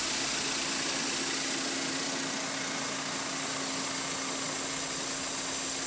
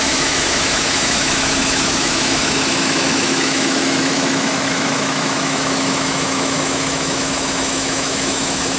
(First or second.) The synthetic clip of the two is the second